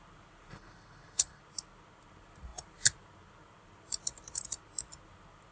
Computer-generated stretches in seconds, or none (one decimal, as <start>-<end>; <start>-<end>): 0.5-1.4